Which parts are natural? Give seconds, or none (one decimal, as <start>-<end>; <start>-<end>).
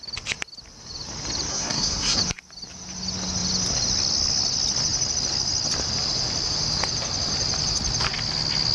0.0-1.5; 2.2-8.7